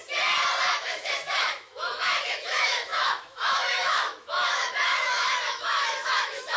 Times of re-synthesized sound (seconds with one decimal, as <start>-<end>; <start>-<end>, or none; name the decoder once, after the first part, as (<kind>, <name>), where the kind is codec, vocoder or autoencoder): 0.7-6.6 (autoencoder, DAC-VAE)